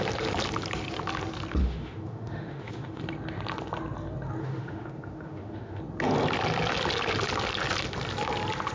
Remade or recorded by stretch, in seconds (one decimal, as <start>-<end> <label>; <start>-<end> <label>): 0.0-1.6 recorded; 1.6-3.0 remade; 3.0-4.4 recorded; 4.4-5.8 remade; 5.8-8.7 recorded